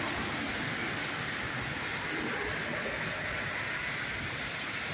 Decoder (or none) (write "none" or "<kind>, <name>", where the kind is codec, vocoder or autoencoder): none